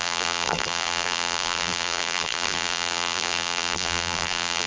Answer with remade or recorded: remade